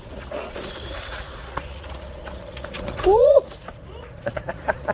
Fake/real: fake